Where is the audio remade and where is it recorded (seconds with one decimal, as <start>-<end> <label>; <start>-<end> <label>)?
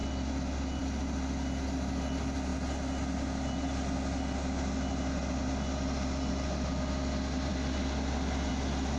0.0-9.0 recorded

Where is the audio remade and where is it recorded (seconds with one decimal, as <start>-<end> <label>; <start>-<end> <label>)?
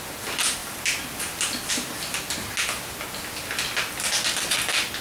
0.0-5.0 recorded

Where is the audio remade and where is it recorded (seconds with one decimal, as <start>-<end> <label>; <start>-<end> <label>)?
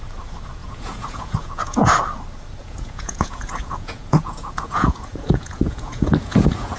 0.0-0.6 recorded; 0.6-1.9 remade; 1.9-2.6 recorded; 2.6-6.8 remade